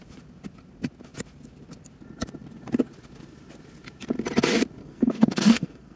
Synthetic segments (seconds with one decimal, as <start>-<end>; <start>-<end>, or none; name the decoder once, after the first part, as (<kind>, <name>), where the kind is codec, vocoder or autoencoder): 4.8-6.0 (codec, SNAC)